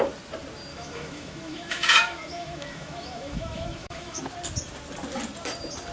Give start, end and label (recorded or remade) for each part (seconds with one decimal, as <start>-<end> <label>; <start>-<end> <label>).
0.0-0.7 recorded; 0.7-4.2 remade; 4.2-5.9 recorded